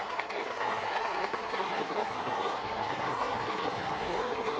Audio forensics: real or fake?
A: fake